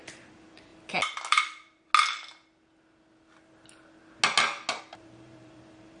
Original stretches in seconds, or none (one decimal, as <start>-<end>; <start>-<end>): 0.7-1.3; 1.9-4.8